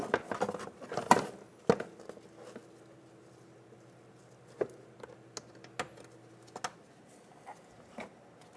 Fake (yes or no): no